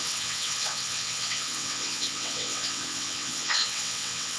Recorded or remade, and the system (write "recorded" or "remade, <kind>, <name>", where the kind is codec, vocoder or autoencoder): remade, vocoder, WaveNeXt